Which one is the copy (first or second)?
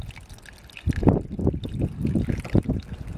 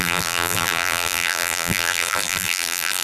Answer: second